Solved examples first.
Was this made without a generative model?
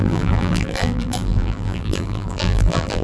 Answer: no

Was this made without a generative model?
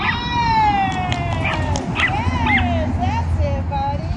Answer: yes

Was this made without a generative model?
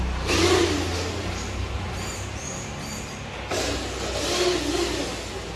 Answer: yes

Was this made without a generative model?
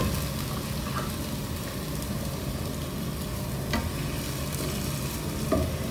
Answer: yes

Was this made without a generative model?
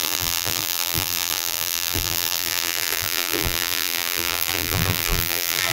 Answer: no